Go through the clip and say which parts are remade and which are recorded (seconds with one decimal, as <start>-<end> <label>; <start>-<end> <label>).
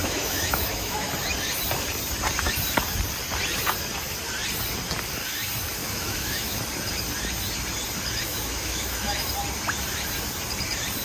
0.0-1.1 remade; 1.1-5.8 recorded; 5.8-6.6 remade; 6.6-8.3 recorded; 8.3-9.3 remade; 9.3-11.0 recorded